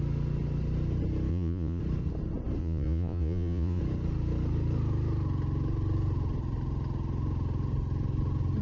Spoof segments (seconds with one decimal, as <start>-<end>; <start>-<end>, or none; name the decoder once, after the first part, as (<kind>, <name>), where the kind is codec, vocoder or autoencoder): 1.3-1.8 (vocoder, Vocos); 2.6-3.8